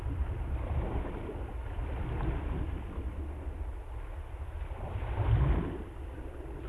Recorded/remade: recorded